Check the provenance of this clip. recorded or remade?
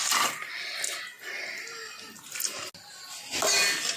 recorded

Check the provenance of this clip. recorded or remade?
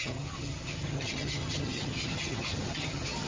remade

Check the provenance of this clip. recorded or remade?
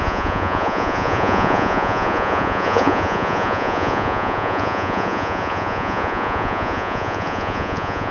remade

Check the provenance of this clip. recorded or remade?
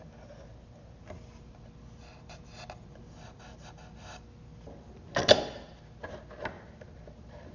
recorded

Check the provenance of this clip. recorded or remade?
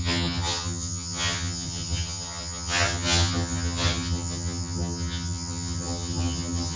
remade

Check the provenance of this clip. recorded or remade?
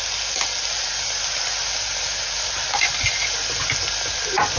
recorded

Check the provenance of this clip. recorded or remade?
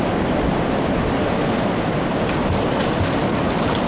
recorded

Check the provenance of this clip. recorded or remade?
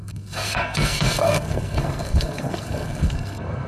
remade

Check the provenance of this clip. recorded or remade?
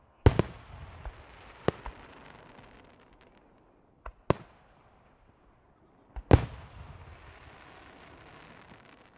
recorded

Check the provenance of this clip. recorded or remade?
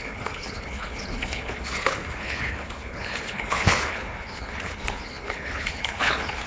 remade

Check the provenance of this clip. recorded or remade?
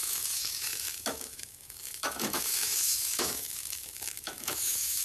remade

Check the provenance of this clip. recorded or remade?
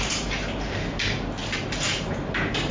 remade